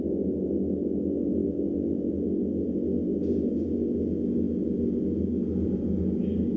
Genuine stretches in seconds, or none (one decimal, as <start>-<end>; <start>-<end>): 0.0-6.6